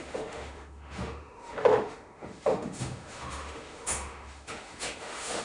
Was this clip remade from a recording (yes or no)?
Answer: yes